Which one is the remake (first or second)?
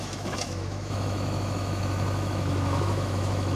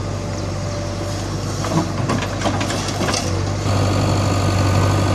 first